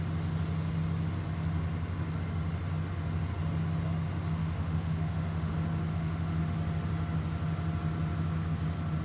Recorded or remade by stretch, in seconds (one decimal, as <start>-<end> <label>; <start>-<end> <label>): 0.0-4.4 recorded; 4.4-5.5 remade; 5.5-5.9 recorded; 5.9-6.4 remade; 6.4-9.0 recorded